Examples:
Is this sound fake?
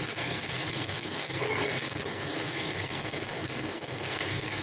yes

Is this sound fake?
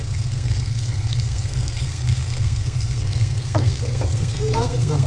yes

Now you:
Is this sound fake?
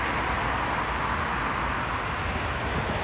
no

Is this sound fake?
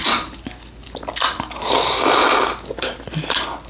no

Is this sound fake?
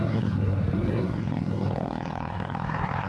yes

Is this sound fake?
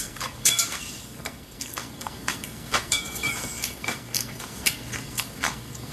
yes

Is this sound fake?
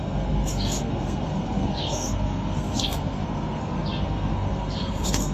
yes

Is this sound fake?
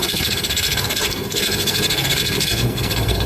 yes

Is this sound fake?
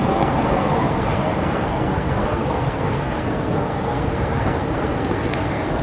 yes